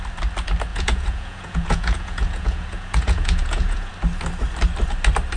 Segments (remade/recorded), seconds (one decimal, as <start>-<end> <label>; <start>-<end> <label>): 0.0-0.7 recorded; 0.7-3.9 remade; 3.9-5.4 recorded